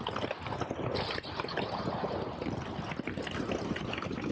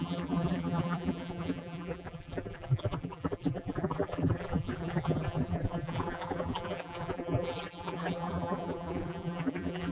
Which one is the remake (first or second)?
second